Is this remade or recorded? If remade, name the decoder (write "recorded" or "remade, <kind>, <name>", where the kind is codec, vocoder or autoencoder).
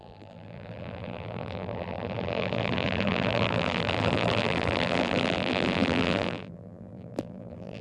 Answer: remade, vocoder, BigVGAN v2